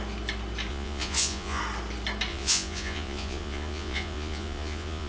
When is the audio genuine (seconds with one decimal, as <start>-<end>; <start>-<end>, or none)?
0.0-0.7; 1.6-2.3